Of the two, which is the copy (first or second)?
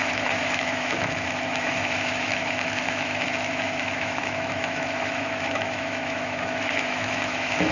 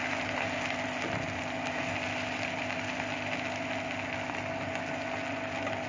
first